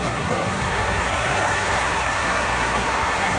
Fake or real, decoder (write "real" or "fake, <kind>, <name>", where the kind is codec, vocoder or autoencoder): fake, codec, SNAC